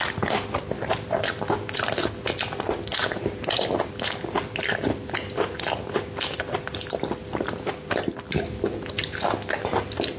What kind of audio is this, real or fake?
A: real